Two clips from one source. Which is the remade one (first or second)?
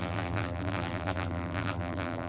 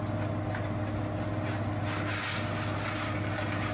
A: first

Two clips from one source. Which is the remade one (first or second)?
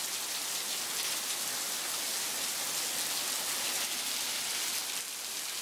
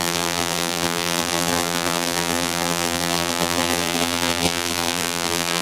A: second